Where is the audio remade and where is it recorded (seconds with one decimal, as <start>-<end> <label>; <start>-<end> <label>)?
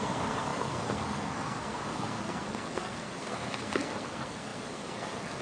0.0-5.4 remade